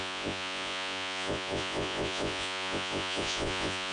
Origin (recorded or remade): remade